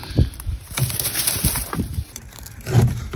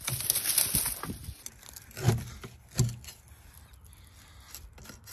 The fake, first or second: first